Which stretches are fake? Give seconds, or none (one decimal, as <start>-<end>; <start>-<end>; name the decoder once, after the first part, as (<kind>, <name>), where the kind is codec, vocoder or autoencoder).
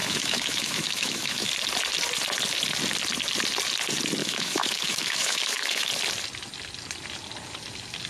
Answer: 0.0-1.5 (autoencoder, DAC-VAE); 4.2-5.9